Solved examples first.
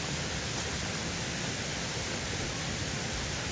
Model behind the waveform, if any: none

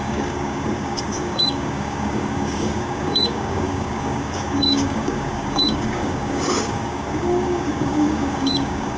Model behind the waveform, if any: codec, DAC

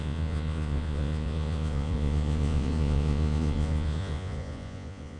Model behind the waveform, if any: vocoder, Vocos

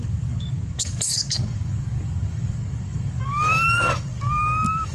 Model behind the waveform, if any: codec, DAC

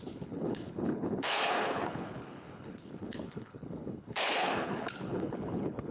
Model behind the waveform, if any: codec, HILCodec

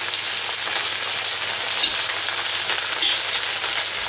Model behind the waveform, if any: none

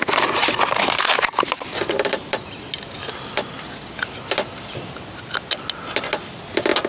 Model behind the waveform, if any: none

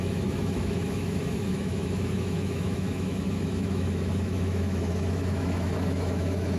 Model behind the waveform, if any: autoencoder, DAC-VAE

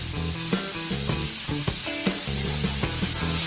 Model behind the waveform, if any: none